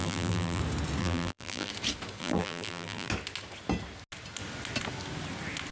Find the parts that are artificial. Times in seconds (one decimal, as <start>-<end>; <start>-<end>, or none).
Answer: 0.0-0.6; 1.0-1.7; 2.2-3.1